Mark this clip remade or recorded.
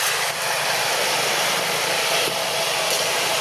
recorded